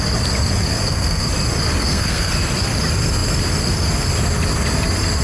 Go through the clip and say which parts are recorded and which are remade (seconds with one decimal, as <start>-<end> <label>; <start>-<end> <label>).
0.0-0.7 recorded; 0.7-1.3 remade; 1.3-1.8 recorded; 1.8-2.3 remade; 2.3-5.2 recorded